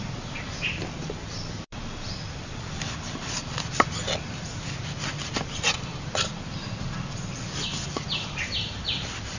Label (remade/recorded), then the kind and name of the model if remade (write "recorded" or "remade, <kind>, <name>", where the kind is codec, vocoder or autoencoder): remade, vocoder, BigVGAN v2